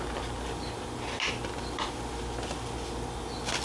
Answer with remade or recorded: recorded